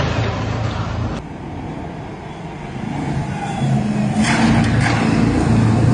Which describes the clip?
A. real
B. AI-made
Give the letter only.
A